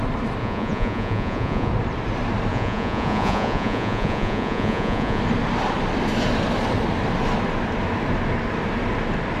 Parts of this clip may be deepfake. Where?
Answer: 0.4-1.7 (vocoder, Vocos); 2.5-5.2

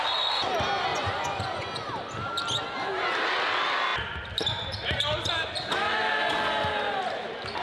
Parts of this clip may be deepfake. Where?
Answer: 0.9-1.7 (vocoder, Vocos)

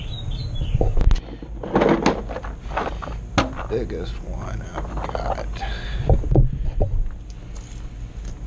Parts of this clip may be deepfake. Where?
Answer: none

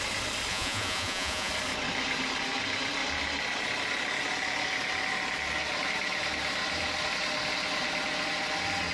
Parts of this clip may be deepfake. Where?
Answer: 0.5-1.5 (vocoder, Vocos)

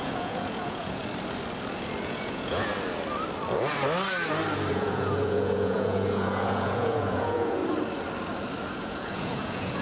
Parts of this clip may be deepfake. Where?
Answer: 0.0-1.0 (vocoder, Vocos); 2.0-2.7; 4.7-7.6; 8.7-9.8

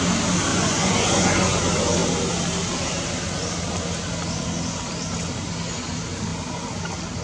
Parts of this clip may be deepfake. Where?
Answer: 0.5-1.6 (vocoder, Vocos)